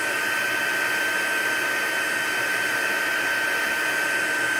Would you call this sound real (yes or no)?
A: yes